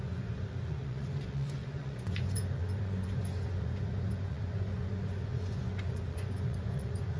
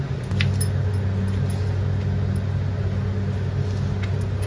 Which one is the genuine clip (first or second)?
second